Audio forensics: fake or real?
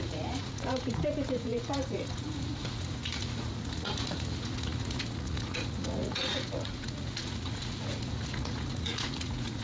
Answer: fake